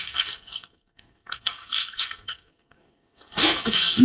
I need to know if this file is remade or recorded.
remade